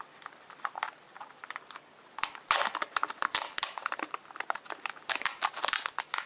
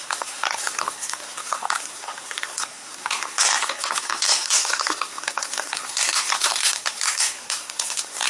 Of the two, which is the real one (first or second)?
first